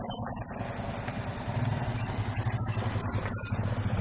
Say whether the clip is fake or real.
real